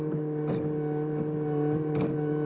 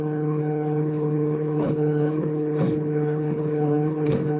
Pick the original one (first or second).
first